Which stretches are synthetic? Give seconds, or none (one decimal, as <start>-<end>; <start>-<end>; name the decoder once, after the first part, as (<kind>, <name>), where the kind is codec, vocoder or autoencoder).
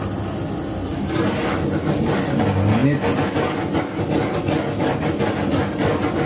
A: none